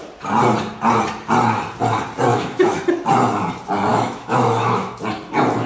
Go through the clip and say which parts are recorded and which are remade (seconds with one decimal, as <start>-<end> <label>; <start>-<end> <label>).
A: 0.0-2.3 recorded; 2.3-2.8 remade; 2.8-3.9 recorded; 3.9-5.0 remade; 5.0-5.7 recorded